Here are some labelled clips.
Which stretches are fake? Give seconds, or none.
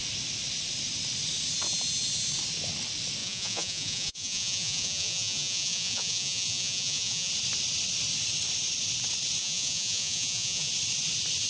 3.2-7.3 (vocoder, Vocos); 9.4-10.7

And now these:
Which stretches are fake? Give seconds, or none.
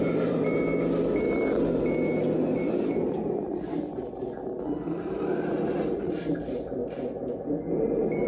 0.0-0.7 (vocoder, BigVGAN v2); 5.5-6.8; 7.7-8.3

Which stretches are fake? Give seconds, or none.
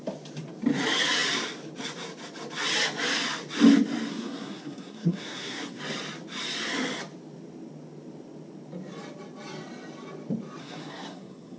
4.1-5.8 (codec, SNAC); 10.6-11.6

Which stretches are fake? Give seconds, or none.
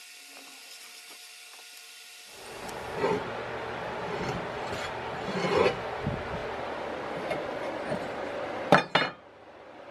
none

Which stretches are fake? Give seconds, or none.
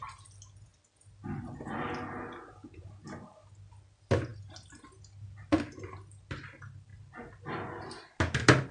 none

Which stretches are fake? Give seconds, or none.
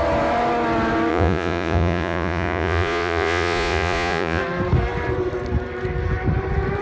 1.1-4.4 (vocoder, Vocos)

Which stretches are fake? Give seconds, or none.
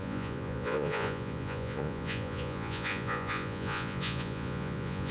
0.0-5.1 (vocoder, Vocos)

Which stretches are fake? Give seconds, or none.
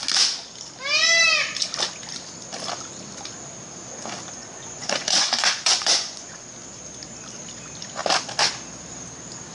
4.4-6.5 (vocoder, Vocos)